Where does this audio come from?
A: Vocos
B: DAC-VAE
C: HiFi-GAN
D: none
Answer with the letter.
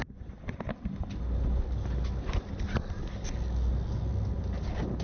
D